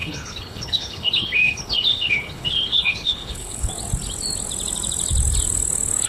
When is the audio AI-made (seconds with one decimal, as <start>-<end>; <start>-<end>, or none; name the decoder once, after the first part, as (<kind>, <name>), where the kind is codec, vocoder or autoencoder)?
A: 0.0-3.7 (codec, HILCodec)